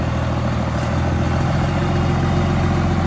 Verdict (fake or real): real